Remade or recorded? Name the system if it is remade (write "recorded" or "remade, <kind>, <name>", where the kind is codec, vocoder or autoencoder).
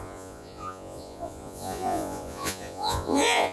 remade, vocoder, Vocos